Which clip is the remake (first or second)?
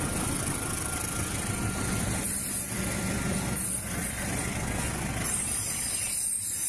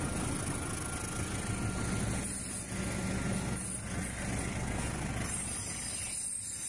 first